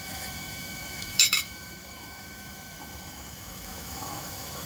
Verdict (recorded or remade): remade